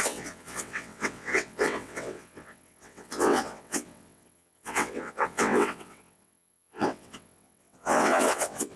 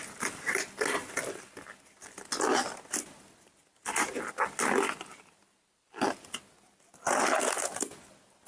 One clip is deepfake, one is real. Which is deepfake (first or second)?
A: first